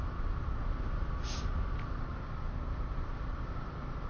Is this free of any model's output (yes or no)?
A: yes